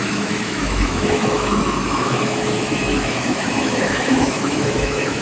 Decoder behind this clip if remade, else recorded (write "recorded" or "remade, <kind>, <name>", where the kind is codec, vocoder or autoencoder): remade, autoencoder, DAC-VAE